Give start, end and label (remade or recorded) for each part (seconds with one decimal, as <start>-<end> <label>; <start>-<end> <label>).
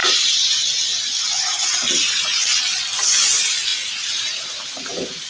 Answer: 0.0-3.7 recorded; 3.7-4.5 remade; 4.5-5.3 recorded